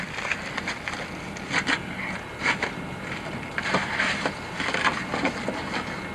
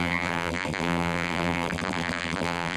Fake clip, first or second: second